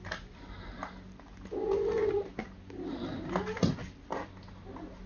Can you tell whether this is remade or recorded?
recorded